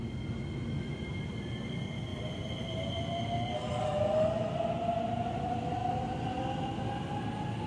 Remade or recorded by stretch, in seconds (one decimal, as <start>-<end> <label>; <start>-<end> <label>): 0.0-5.8 recorded; 5.8-6.4 remade; 6.4-7.7 recorded